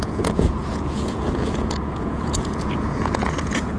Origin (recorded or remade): remade